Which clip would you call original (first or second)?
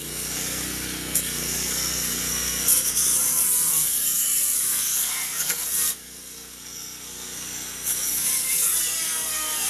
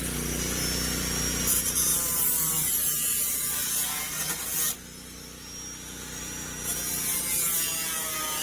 second